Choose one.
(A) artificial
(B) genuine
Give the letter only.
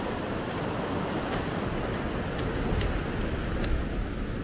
B